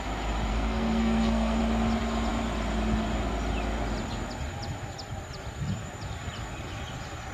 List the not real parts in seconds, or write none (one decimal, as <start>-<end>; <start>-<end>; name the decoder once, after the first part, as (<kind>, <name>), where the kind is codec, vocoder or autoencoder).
0.5-1.6 (codec, SNAC)